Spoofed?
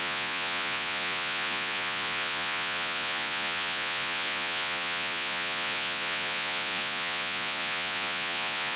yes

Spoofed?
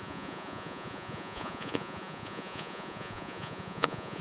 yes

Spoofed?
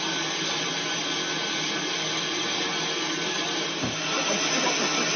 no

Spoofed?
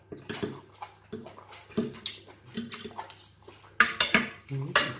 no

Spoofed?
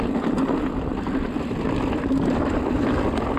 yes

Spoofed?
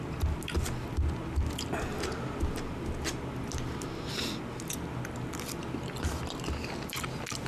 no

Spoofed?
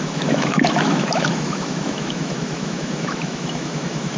yes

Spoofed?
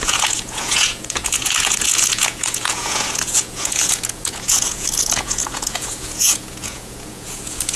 yes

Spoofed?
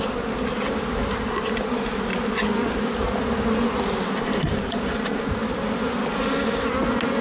no